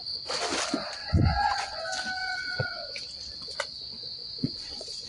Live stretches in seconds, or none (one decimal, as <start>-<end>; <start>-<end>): 0.0-1.0; 1.8-2.2; 2.9-4.2

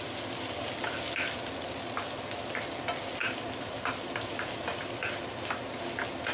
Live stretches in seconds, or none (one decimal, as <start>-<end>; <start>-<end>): 0.0-6.3

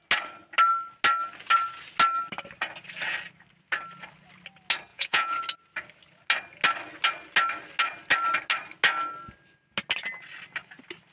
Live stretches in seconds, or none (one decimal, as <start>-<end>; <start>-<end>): 0.0-4.9; 5.4-11.1

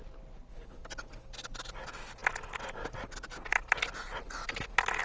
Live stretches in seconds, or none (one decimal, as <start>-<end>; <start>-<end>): 0.0-5.0

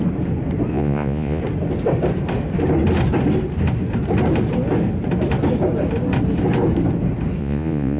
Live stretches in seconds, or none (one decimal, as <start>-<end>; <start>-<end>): 0.0-0.7; 1.4-7.4

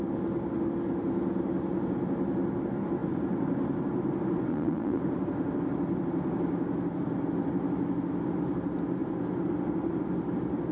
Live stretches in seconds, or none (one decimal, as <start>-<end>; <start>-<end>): 0.0-4.5; 5.0-10.7